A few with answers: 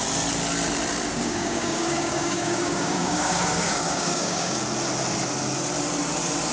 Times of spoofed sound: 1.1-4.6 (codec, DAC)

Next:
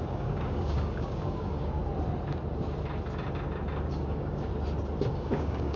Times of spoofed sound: 0.0-1.8 (codec, DAC); 3.9-4.5; 5.1-5.8

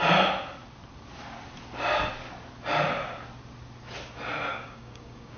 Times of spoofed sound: 4.5-5.4 (codec, DAC)

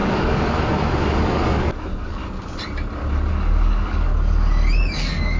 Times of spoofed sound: 0.0-2.2 (codec, DAC); 3.3-4.1; 4.8-5.4

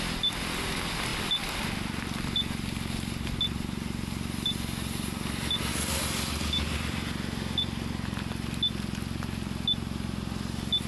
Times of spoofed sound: none

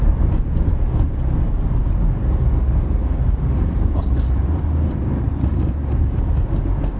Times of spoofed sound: none